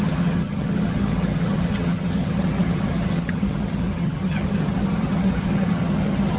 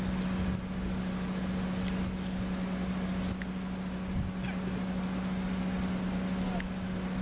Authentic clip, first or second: second